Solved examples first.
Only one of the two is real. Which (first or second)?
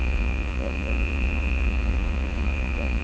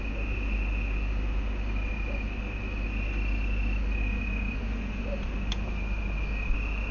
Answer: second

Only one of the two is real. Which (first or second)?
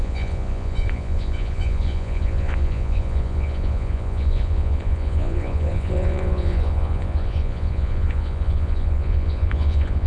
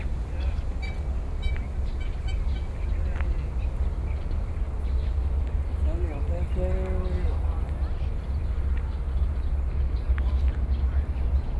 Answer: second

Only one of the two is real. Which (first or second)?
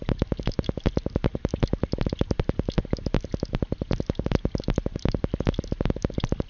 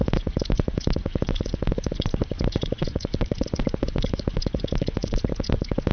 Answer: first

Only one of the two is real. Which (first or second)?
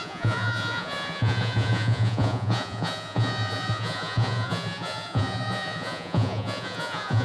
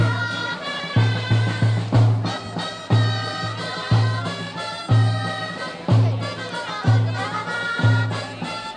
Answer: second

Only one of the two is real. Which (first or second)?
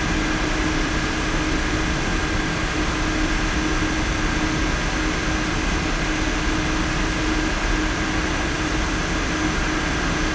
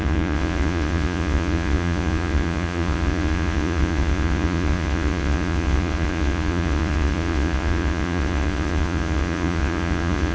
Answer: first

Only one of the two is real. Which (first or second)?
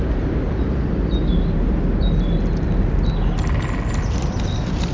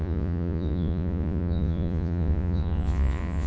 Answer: first